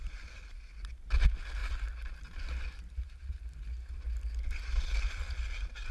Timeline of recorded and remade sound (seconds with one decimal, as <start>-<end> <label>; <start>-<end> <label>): 0.0-5.9 recorded